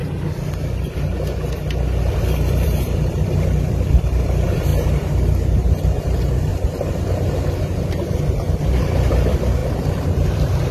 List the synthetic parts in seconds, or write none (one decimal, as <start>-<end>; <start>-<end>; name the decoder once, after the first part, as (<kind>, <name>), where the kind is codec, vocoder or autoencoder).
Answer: 2.0-4.7 (vocoder, BigVGAN v2); 5.8-6.5; 8.2-10.7